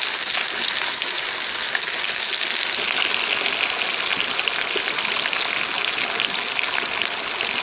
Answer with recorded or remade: recorded